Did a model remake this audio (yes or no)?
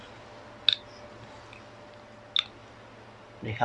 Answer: no